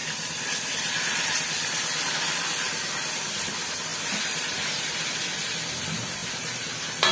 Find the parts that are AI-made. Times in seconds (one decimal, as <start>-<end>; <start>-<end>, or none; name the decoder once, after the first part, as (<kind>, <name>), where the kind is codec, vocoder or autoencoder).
0.0-3.9 (vocoder, BigVGAN v2); 4.7-6.2